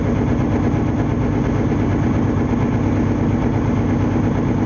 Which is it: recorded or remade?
recorded